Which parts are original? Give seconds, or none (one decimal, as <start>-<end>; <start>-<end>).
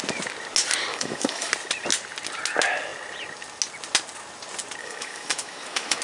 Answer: 0.0-0.9; 1.5-4.8